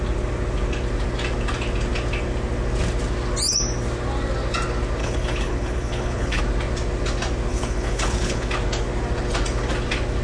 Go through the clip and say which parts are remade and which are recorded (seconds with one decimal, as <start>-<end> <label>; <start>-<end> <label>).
0.0-5.0 recorded; 5.0-6.4 remade; 6.4-7.5 recorded; 7.5-8.5 remade; 8.5-10.2 recorded